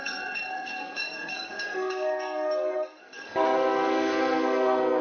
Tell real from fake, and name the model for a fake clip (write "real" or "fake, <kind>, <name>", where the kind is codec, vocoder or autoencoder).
fake, codec, SNAC